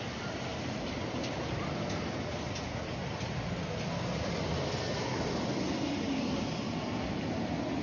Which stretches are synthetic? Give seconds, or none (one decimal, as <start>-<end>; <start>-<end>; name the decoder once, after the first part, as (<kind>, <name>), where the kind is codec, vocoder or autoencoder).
none